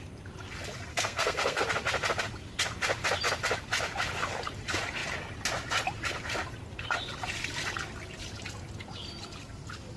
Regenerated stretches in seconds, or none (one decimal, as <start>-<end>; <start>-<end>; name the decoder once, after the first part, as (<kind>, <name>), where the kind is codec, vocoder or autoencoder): 0.9-1.6 (codec, SNAC)